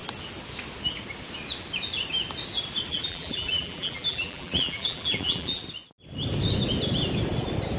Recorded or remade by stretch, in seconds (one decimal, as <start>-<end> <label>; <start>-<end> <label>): 0.0-2.9 recorded; 2.9-5.6 remade; 5.6-7.8 recorded